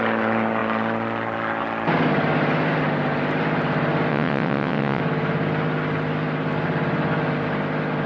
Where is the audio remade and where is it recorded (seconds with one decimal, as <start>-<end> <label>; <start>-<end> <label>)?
0.0-4.1 recorded; 4.1-5.0 remade; 5.0-8.1 recorded